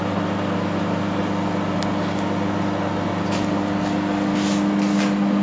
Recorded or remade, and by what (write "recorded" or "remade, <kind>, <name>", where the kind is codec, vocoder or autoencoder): recorded